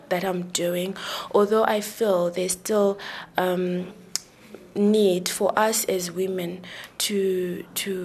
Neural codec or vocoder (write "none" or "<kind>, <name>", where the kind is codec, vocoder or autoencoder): none